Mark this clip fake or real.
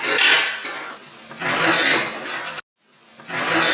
real